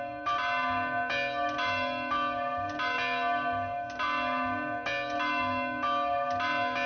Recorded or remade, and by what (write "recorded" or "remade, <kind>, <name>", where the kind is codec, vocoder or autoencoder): recorded